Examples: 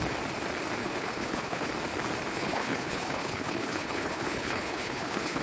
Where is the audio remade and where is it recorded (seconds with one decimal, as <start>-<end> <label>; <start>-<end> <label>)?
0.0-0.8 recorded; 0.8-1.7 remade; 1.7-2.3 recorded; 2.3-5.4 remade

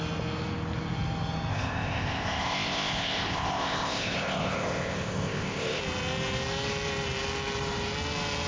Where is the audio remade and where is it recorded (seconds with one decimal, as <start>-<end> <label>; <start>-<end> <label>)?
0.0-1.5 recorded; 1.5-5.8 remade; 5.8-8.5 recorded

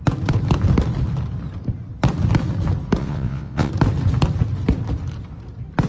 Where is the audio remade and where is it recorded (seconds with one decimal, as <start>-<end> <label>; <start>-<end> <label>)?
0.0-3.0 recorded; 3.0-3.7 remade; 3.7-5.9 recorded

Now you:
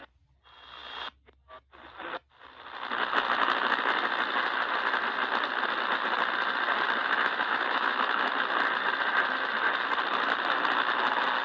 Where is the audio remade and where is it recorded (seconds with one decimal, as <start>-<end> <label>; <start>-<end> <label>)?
0.0-7.0 recorded; 7.0-8.3 remade; 8.3-11.4 recorded